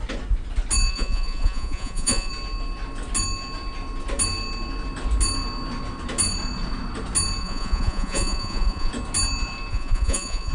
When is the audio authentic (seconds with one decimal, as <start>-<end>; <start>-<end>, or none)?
0.0-0.9; 2.3-7.4; 8.9-9.7

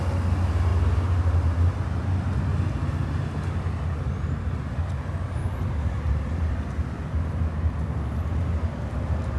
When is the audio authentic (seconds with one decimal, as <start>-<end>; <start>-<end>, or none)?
0.0-9.4

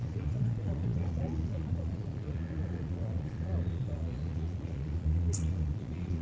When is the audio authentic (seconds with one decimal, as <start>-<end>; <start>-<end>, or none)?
none

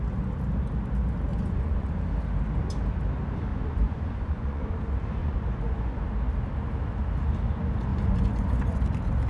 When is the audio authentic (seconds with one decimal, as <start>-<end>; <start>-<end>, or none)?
0.0-1.3; 1.9-3.5; 4.8-5.2; 6.0-7.9; 8.8-9.3

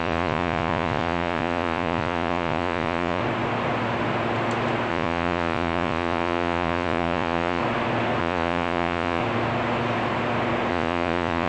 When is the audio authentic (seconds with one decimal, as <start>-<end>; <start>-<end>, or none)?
3.2-4.9; 7.6-8.2; 9.2-10.7

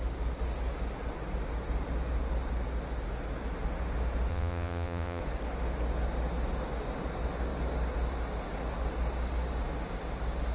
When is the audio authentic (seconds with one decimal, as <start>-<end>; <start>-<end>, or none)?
0.0-4.3; 5.2-10.5

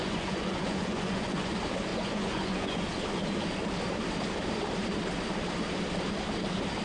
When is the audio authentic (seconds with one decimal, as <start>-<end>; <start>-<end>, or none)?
1.5-1.9; 2.8-6.8